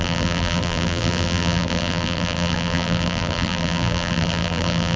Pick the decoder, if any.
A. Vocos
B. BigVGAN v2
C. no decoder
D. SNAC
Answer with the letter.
B